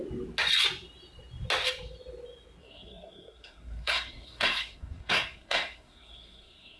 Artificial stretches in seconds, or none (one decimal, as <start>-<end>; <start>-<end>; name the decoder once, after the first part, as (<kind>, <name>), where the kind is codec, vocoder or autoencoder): 2.6-6.8 (codec, SNAC)